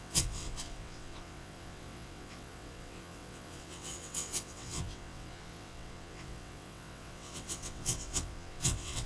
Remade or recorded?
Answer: remade